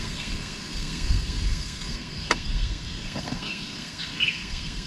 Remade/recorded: remade